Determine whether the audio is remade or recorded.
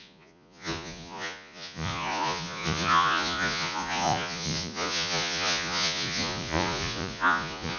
remade